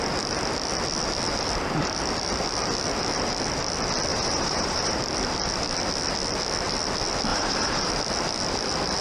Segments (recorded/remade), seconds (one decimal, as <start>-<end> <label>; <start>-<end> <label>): 0.0-4.1 recorded; 4.1-5.0 remade; 5.0-7.3 recorded; 7.3-7.9 remade; 7.9-9.0 recorded